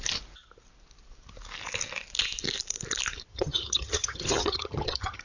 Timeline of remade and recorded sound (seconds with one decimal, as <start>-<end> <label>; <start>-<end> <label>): 0.0-3.3 recorded; 3.3-5.2 remade